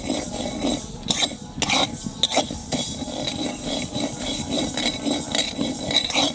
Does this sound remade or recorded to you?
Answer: recorded